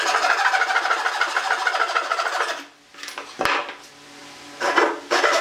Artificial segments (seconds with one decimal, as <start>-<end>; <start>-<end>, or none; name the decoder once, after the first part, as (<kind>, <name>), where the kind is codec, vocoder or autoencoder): none